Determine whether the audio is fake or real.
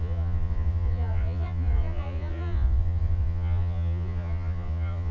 fake